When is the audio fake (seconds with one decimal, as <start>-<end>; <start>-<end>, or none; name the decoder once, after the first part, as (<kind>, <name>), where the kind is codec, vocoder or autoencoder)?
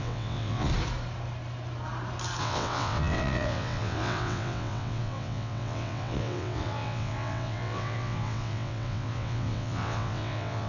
0.0-0.7 (vocoder, WaveNeXt); 2.4-10.7